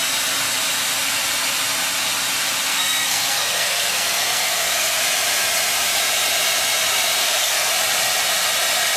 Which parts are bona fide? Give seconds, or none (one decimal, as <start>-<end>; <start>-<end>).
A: 0.0-2.7; 5.0-7.2; 7.7-9.0